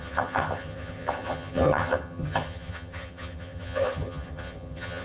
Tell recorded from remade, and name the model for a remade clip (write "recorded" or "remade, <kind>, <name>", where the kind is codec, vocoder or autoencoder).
remade, vocoder, HiFi-GAN